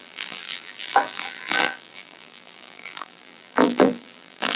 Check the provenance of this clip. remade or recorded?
remade